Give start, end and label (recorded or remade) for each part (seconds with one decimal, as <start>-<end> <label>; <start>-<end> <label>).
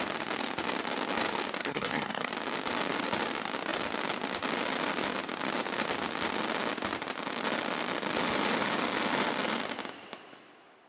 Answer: 0.0-1.6 recorded; 1.6-2.3 remade; 2.3-10.9 recorded